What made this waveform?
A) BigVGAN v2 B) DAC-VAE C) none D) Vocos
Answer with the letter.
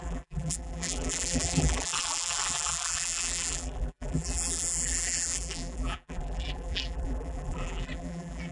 A